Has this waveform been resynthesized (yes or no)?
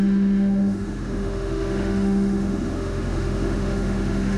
yes